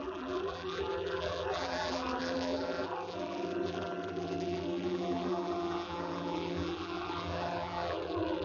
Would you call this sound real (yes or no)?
no